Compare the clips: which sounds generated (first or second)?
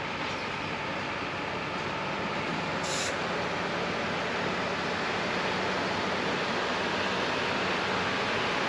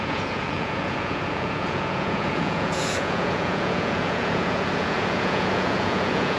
second